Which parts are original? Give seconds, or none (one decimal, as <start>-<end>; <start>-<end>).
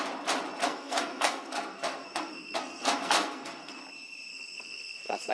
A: 0.0-0.6; 3.8-4.3